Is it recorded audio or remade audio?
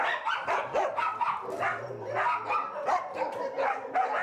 recorded